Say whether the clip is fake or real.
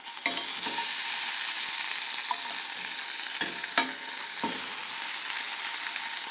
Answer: real